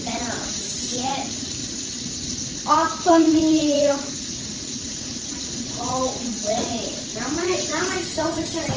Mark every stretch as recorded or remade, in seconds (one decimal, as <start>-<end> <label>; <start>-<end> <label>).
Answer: 0.0-1.6 remade; 1.6-2.7 recorded; 2.7-8.8 remade